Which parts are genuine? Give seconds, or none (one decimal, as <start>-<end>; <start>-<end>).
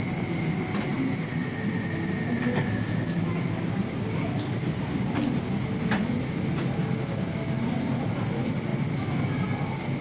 0.0-10.0